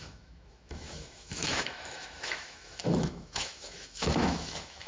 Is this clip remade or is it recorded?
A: remade